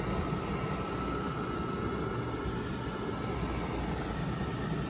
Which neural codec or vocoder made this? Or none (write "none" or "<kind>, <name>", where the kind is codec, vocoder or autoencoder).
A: none